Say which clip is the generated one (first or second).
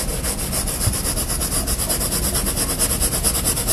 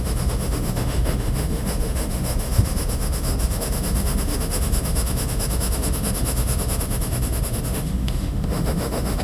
second